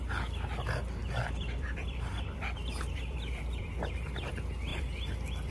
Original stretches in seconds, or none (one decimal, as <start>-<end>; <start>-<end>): 0.0-1.0; 4.3-4.7